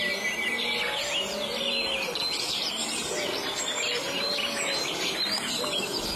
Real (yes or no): yes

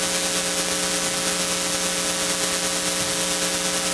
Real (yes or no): yes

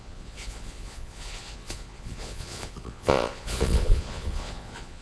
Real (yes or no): no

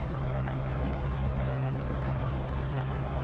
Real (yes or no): no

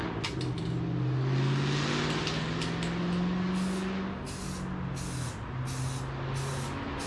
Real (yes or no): yes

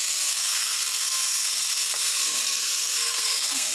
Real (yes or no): no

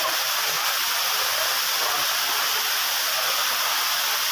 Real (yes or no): yes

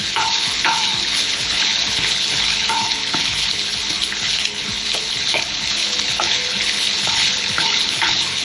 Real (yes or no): no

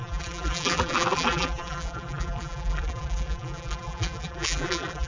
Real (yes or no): no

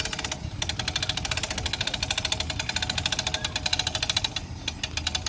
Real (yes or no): yes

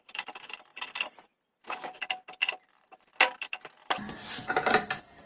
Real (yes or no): yes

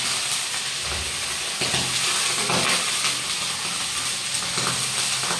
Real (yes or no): yes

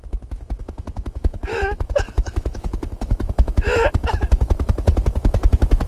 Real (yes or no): no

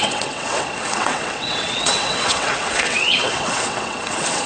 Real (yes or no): no